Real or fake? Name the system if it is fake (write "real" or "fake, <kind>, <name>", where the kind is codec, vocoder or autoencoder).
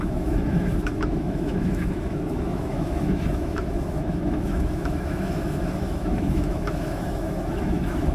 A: fake, autoencoder, DAC-VAE